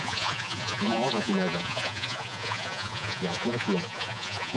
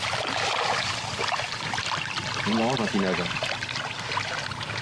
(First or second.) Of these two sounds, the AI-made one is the first